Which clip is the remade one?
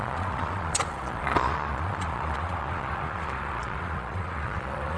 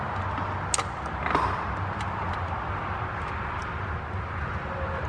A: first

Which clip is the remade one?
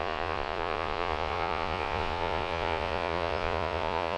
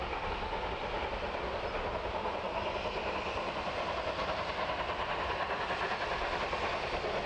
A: first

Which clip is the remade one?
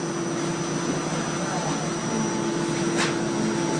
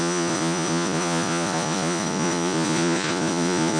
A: second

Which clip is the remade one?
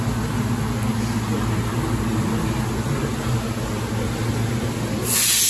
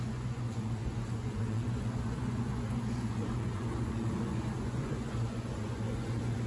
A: second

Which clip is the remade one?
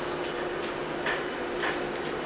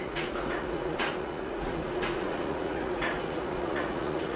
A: second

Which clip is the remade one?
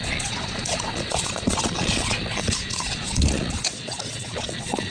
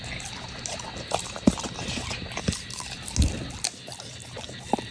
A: first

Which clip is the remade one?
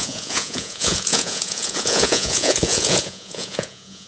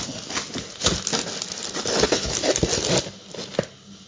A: first